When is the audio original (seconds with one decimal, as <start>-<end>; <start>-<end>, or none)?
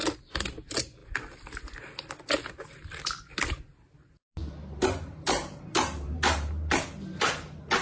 0.0-4.4; 6.5-7.8